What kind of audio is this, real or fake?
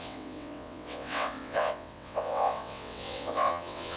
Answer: fake